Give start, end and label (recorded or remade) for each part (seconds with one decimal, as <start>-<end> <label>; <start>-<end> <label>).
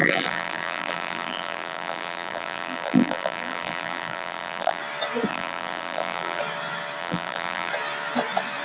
0.0-4.8 remade; 4.8-5.3 recorded; 5.3-6.4 remade; 6.4-7.0 recorded; 7.0-7.7 remade; 7.7-8.6 recorded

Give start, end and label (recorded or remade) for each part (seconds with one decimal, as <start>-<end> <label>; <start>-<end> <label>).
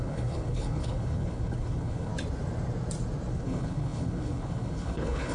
0.0-2.1 remade; 2.1-3.3 recorded; 3.3-5.3 remade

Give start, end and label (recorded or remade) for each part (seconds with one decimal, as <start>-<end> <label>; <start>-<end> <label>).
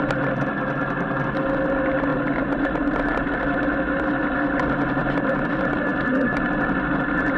0.0-7.4 recorded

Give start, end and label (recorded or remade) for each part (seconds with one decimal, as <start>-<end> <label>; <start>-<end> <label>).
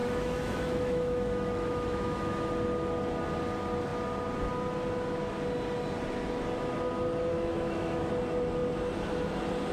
0.0-2.5 remade; 2.5-7.3 recorded; 7.3-8.1 remade; 8.1-9.7 recorded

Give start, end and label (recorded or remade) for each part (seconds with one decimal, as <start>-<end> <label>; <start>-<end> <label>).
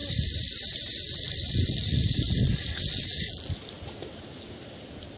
0.0-2.8 remade; 2.8-5.2 recorded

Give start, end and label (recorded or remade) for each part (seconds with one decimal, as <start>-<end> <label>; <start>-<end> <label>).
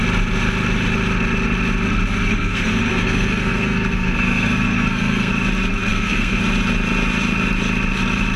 0.0-2.3 recorded; 2.3-5.3 remade; 5.3-5.9 recorded; 5.9-6.4 remade; 6.4-8.4 recorded